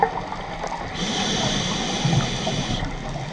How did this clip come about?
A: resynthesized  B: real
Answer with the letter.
B